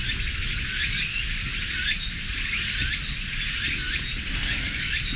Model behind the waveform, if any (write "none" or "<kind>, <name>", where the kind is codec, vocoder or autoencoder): none